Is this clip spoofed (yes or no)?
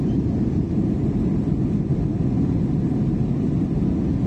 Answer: no